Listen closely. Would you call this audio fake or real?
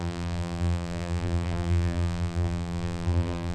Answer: fake